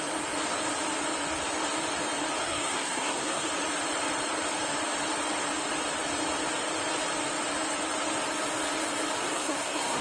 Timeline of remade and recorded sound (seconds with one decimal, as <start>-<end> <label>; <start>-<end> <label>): 0.0-2.4 recorded; 2.4-3.5 remade; 3.5-9.2 recorded; 9.2-10.0 remade